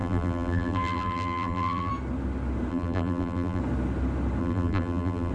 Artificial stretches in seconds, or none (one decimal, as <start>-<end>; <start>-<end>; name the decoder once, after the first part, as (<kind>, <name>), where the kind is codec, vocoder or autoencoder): 0.0-1.9 (vocoder, BigVGAN v2); 2.7-3.6; 4.4-5.3